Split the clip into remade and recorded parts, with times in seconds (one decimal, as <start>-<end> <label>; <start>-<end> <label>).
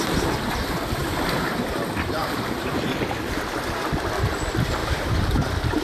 0.0-2.2 recorded; 2.2-3.0 remade; 3.0-4.8 recorded; 4.8-5.8 remade